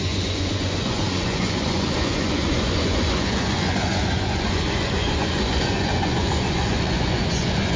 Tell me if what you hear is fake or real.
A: fake